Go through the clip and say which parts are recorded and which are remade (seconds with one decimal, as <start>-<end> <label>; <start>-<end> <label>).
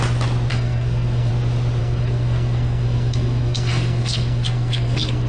0.0-0.5 recorded; 0.5-1.3 remade; 1.3-1.8 recorded; 1.8-5.3 remade